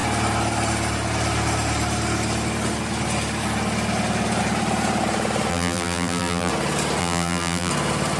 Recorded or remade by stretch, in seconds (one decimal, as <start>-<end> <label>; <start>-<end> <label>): 0.0-5.5 recorded; 5.5-6.5 remade; 6.5-7.0 recorded; 7.0-7.7 remade; 7.7-8.2 recorded